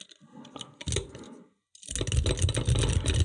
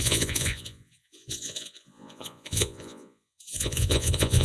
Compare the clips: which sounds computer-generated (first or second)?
second